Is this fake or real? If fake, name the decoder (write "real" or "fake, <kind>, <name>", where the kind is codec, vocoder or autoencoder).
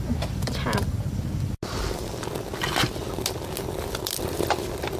real